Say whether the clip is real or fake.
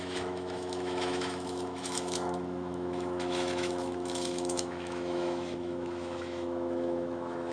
fake